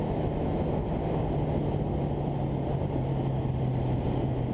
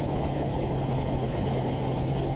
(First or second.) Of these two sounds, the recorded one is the first